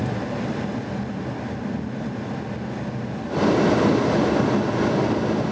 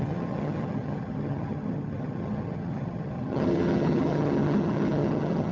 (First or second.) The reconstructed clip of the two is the second